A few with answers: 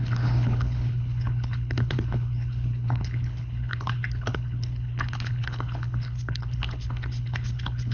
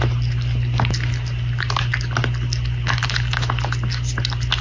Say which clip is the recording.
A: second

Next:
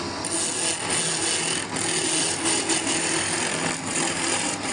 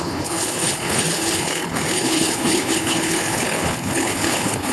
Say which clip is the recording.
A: first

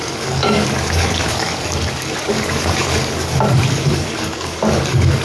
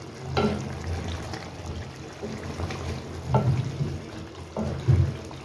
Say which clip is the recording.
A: second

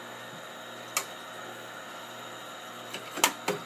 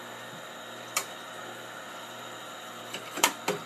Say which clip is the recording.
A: first